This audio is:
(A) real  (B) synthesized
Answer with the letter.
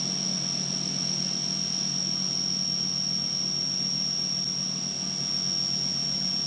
A